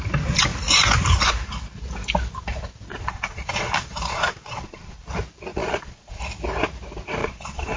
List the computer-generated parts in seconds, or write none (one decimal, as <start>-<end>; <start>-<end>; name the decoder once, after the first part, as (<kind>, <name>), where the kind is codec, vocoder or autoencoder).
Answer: 2.9-5.0 (vocoder, Vocos); 5.5-6.2; 7.2-7.8